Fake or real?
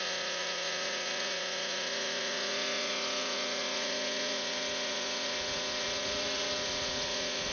fake